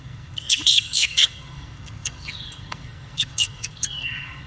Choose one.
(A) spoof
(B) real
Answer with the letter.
A